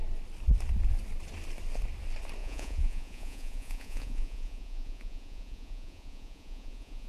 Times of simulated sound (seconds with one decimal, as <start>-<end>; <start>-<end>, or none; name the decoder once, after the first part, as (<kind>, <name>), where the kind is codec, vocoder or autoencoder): 2.4-7.1 (vocoder, Vocos)

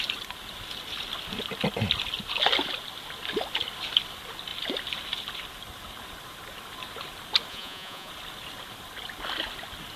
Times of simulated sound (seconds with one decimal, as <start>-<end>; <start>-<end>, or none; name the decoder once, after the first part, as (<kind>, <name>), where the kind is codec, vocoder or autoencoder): 7.5-8.1 (vocoder, Vocos)